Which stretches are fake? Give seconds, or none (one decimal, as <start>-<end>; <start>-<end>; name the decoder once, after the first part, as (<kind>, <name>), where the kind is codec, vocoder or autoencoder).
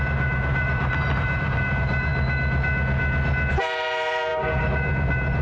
0.0-2.1 (vocoder, BigVGAN v2); 3.5-5.4